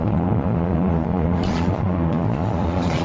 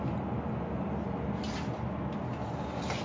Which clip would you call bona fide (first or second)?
second